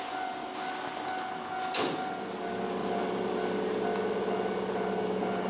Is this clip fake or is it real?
real